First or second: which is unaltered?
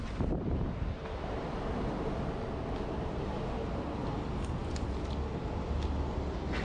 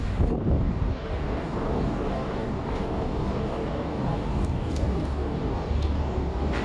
first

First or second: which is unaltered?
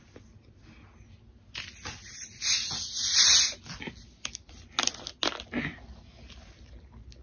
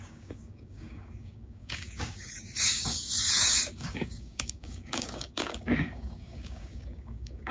first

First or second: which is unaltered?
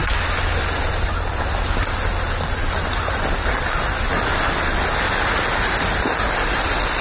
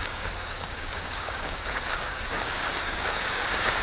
first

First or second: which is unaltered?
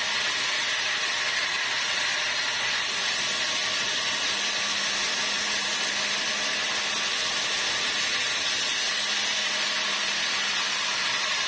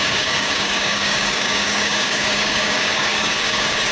first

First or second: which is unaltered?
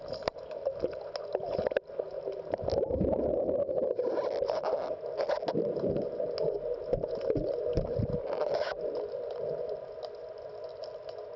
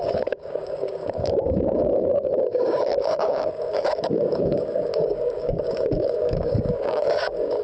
first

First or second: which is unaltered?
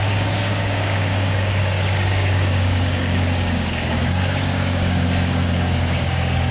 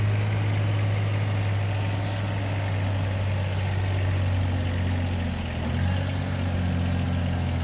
second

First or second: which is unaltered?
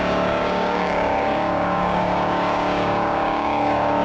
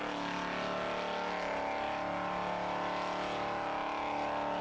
second